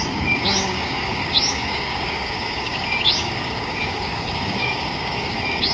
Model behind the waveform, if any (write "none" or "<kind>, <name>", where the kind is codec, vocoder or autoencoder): codec, DAC